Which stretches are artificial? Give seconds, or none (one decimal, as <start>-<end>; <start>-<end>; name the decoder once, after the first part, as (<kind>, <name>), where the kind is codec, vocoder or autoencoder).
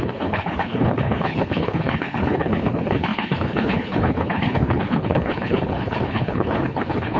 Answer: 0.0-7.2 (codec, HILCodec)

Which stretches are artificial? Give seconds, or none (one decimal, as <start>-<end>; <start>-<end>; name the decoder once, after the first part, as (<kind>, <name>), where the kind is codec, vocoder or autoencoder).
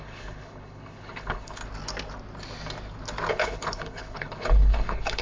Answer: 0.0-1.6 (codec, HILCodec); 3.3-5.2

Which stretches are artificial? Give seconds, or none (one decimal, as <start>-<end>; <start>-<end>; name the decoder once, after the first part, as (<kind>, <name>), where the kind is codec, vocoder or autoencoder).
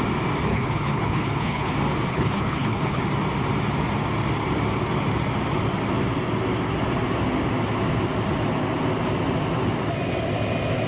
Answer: 0.5-1.7 (codec, HILCodec); 2.1-3.0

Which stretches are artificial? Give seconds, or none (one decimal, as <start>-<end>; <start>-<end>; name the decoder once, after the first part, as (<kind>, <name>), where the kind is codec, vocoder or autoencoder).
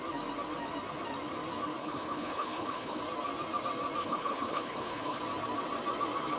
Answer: 1.8-3.0 (codec, HILCodec); 4.0-5.2